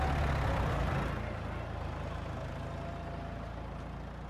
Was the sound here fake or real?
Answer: real